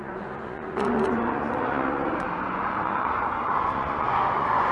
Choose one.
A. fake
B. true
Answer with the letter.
A